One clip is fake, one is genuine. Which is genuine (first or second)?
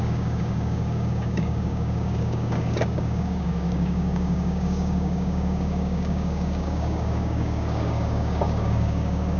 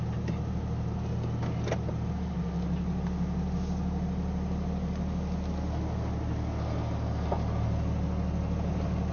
second